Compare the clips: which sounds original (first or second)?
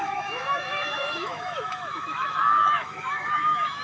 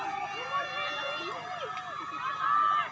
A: second